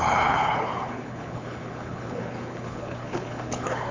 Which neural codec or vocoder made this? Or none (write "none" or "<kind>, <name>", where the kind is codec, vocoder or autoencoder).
codec, HILCodec